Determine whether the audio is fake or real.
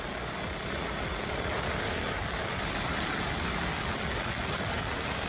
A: real